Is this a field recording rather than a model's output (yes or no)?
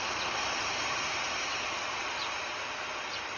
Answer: yes